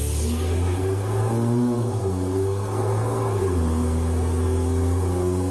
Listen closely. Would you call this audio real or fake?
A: fake